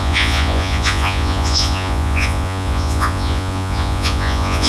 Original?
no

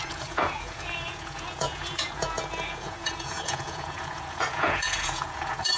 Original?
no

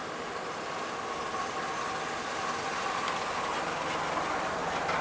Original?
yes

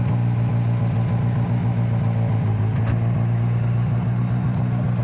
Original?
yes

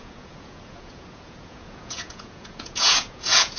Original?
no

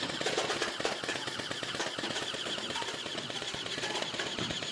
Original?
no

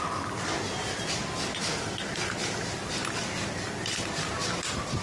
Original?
yes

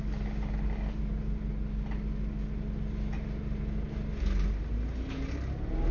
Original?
yes